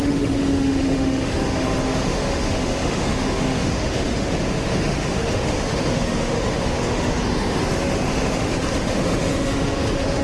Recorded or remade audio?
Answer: remade